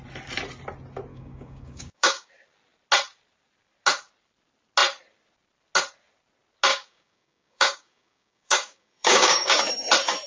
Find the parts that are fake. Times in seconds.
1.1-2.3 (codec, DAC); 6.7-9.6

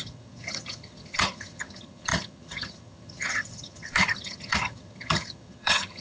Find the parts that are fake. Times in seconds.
0.0-6.0 (vocoder, HiFi-GAN)